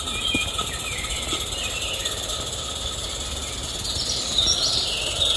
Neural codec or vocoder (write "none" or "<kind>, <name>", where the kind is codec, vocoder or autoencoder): none